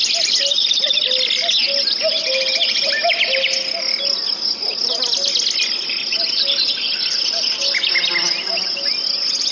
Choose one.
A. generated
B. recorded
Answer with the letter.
B